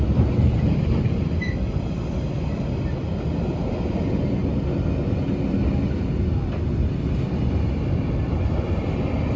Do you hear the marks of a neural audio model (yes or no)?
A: no